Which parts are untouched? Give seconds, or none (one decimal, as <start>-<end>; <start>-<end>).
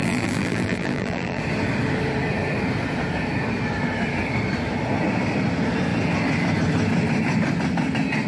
1.4-8.3